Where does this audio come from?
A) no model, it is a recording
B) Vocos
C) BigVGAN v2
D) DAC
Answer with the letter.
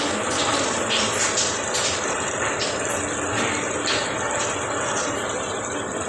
A